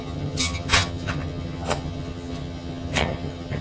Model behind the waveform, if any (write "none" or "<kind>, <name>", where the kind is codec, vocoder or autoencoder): vocoder, HiFi-GAN